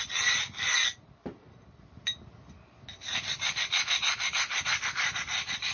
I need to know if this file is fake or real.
real